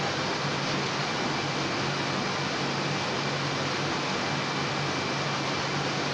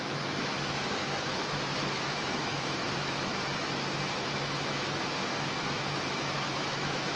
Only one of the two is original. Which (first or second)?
first